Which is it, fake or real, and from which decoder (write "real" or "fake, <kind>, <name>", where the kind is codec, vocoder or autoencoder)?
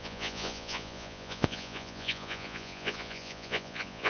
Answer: fake, vocoder, Vocos